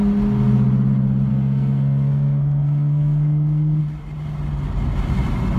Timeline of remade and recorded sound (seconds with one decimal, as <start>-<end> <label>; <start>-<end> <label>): 0.0-1.3 recorded; 1.3-3.8 remade; 3.8-5.6 recorded